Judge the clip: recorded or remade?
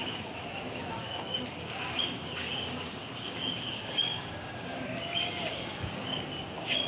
remade